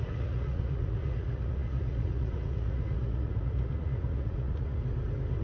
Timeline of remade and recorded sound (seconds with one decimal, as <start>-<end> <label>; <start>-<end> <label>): 0.0-4.8 remade; 4.8-5.4 recorded